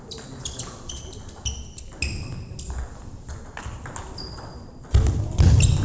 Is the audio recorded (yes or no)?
yes